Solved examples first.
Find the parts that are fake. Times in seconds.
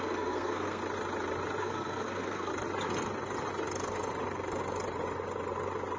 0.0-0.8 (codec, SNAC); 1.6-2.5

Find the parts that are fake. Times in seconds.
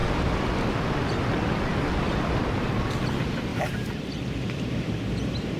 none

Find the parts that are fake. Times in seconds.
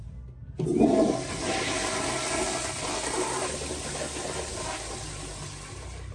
none